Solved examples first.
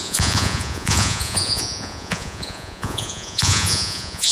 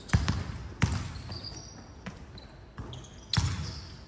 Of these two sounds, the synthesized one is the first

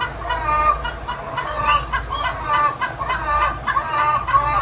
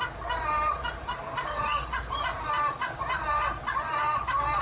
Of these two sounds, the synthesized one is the second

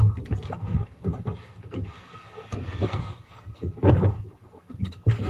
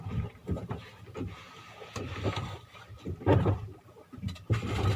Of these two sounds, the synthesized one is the first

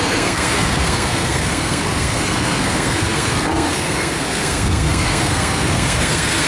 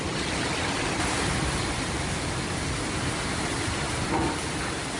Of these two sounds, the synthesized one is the first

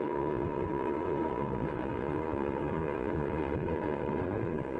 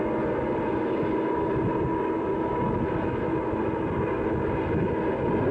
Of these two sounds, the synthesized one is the first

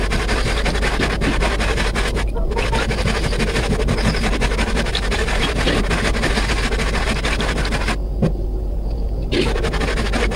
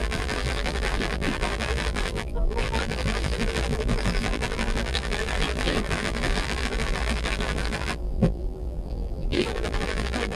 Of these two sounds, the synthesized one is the second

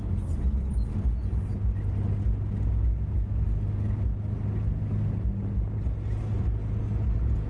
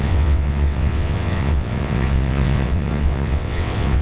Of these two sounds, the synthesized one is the second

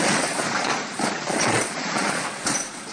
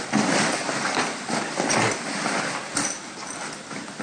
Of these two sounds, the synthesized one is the first